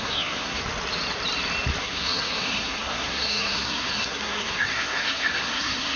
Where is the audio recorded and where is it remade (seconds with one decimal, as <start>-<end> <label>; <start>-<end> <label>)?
0.0-0.6 remade; 0.6-1.8 recorded; 1.8-6.0 remade